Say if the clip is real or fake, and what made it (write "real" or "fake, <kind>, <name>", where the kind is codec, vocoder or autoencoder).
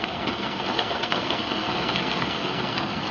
fake, codec, SNAC